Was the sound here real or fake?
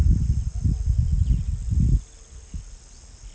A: real